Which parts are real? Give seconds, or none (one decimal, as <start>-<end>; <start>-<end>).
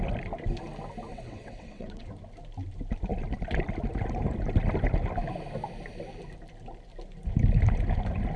0.0-1.1; 2.1-8.4